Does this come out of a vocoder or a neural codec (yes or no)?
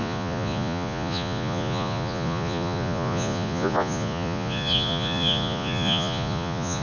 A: yes